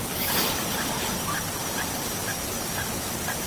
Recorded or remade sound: recorded